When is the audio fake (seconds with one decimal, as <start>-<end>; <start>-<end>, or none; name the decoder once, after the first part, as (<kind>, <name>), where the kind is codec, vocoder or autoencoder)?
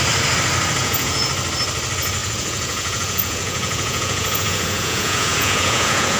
0.8-1.3 (vocoder, Vocos); 2.2-6.2